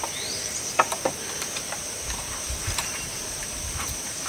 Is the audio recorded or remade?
remade